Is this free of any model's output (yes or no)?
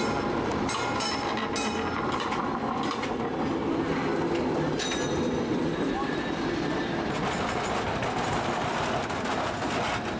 yes